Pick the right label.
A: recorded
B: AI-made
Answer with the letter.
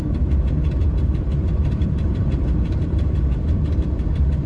B